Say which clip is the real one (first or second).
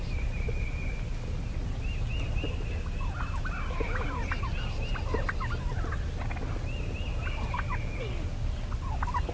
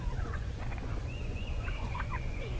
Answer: first